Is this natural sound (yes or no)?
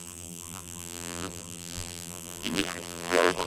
no